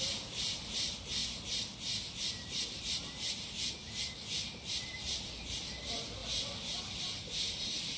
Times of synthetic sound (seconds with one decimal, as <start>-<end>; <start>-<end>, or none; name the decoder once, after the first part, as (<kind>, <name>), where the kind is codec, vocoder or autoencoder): 0.0-1.2 (vocoder, BigVGAN v2); 2.8-6.2; 7.0-8.0